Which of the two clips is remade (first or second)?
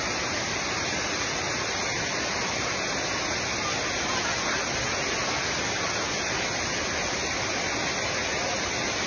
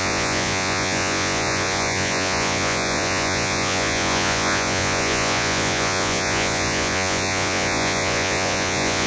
second